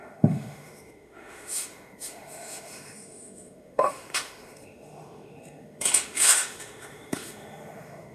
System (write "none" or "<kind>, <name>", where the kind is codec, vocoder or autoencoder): autoencoder, DAC-VAE